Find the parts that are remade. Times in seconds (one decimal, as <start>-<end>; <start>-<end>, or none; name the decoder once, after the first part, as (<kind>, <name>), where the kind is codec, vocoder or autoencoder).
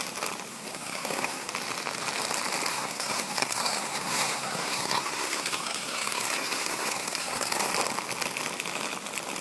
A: 0.5-1.5 (codec, SNAC); 2.7-7.7